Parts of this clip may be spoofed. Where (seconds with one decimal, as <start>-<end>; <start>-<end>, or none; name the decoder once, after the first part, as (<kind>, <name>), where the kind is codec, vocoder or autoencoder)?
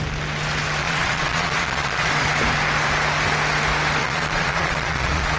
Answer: 0.8-2.1 (vocoder, Vocos); 4.0-5.4